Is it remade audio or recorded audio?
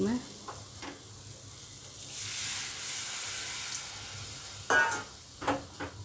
recorded